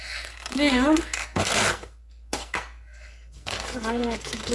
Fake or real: fake